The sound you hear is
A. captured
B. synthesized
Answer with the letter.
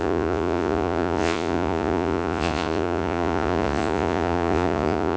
B